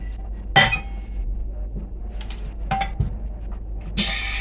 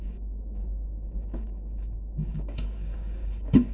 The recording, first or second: first